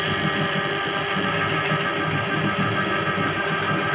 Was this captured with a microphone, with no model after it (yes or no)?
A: yes